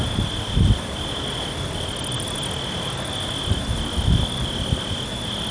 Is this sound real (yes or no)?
yes